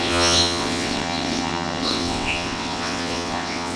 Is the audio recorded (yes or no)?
no